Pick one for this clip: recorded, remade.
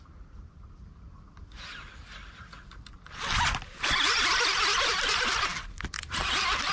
recorded